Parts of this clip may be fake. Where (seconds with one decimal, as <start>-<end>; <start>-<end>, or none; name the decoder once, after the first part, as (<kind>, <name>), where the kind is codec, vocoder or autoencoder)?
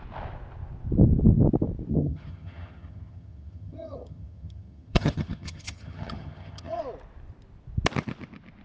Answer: 1.9-6.8 (vocoder, HiFi-GAN)